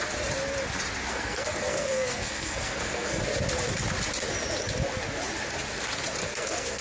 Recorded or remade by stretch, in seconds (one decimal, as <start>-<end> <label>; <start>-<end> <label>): 0.0-1.1 recorded; 1.1-3.2 remade; 3.2-6.2 recorded; 6.2-6.8 remade